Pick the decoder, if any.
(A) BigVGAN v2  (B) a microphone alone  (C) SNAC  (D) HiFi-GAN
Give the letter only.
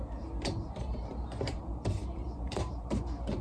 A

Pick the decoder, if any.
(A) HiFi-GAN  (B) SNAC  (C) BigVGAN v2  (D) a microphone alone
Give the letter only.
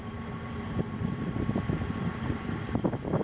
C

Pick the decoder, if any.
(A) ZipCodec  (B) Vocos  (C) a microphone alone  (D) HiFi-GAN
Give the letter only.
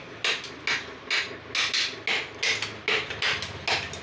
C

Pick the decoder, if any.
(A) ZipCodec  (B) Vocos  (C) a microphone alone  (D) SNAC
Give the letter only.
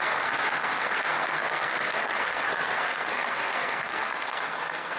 D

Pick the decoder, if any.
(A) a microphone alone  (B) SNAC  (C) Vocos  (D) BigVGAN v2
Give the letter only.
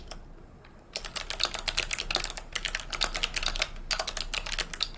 A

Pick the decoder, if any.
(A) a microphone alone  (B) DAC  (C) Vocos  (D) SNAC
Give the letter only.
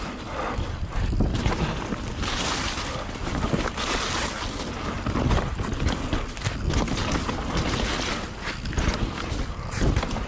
A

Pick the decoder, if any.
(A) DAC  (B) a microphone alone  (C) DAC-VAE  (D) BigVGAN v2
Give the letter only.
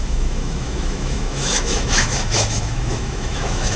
C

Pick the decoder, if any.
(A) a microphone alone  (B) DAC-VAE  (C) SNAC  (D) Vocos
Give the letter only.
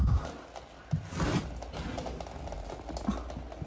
A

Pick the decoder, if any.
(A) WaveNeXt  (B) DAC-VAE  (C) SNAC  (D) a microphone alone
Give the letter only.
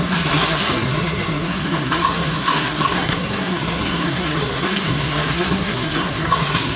C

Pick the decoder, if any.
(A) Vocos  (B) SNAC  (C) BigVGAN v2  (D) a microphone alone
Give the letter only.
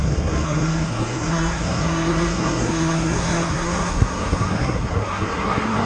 B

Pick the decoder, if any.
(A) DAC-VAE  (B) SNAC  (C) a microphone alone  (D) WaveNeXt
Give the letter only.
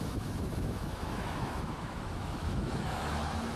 A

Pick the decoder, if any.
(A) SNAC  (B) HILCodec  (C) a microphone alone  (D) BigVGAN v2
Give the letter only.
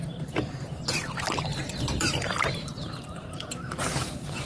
D